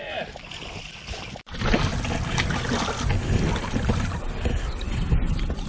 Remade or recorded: recorded